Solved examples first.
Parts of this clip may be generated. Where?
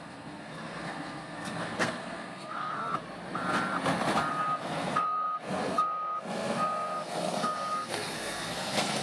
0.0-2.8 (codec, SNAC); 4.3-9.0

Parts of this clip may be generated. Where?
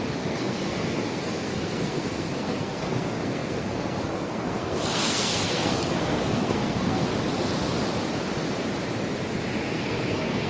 0.0-7.1 (codec, SNAC); 9.7-10.5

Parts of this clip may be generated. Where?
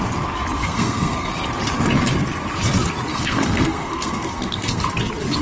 0.6-1.3 (codec, SNAC); 3.1-4.8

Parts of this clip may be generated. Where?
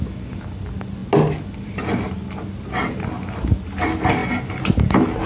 none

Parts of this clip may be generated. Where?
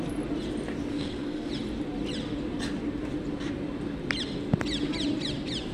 0.9-1.5 (codec, SNAC)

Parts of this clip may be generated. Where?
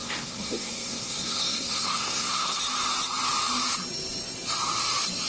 0.0-2.6 (codec, SNAC)